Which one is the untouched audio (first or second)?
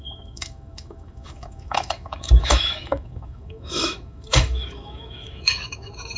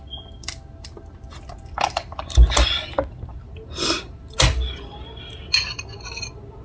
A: second